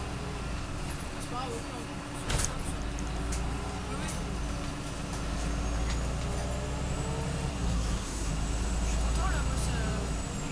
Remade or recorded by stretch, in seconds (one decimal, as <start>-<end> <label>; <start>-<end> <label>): 0.0-7.5 recorded; 7.5-8.3 remade; 8.3-10.5 recorded